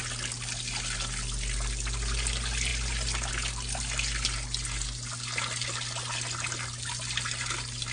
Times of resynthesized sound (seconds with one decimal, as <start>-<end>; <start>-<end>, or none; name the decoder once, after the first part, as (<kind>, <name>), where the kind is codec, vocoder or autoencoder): none